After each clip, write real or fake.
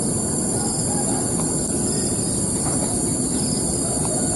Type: real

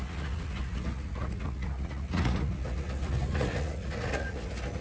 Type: fake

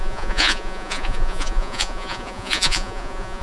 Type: fake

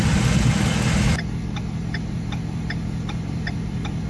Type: real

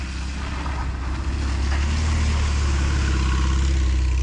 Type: real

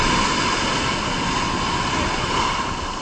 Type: real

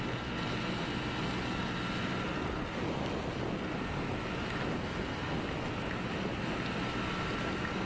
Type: real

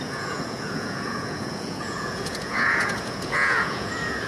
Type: fake